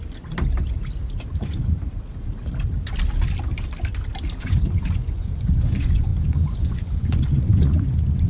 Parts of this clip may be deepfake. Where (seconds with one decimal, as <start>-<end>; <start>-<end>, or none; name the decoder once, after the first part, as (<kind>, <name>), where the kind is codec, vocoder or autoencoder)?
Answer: 1.3-1.8 (vocoder, Vocos); 4.4-8.3